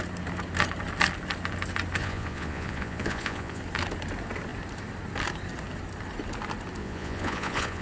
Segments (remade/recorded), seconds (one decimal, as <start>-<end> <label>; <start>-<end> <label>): 0.0-2.0 recorded; 2.0-3.6 remade; 3.6-6.8 recorded; 6.8-7.8 remade